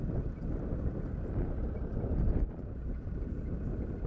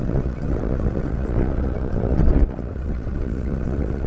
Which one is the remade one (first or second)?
second